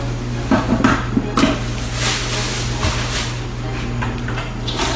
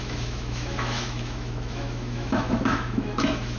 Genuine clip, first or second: first